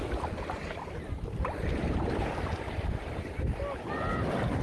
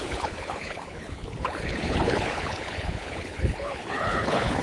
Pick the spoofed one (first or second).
second